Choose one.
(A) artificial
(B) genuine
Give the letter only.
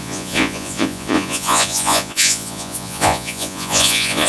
A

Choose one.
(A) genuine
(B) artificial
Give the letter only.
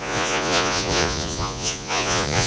B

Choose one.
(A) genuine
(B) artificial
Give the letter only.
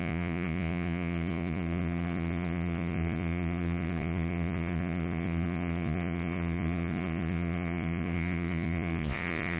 B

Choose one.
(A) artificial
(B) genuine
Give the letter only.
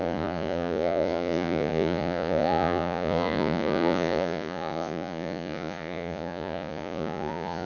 A